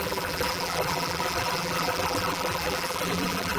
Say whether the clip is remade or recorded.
remade